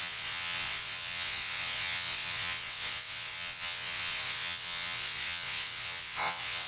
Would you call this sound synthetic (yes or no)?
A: yes